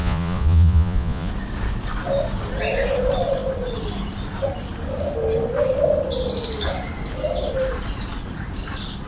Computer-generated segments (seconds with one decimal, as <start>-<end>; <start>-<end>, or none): 0.0-1.3